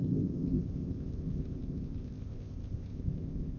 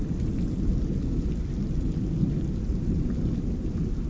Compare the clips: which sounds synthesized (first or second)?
first